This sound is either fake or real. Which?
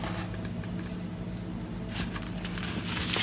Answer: real